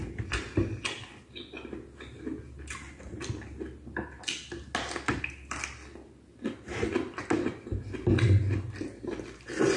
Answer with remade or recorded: recorded